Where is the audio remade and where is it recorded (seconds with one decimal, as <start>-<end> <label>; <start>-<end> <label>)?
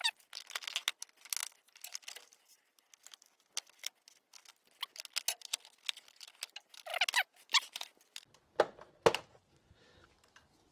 0.0-10.7 recorded